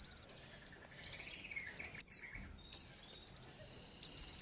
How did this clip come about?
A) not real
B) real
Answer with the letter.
B